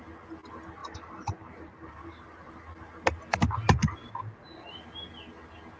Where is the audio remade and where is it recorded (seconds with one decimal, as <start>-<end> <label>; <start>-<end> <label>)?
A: 0.0-0.8 recorded; 0.8-2.5 remade; 2.5-5.8 recorded